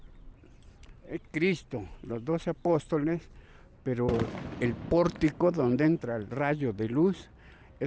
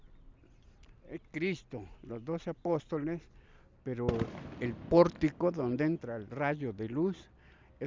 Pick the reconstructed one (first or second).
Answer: first